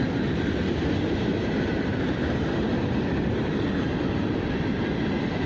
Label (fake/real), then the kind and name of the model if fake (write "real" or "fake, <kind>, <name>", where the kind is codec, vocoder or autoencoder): real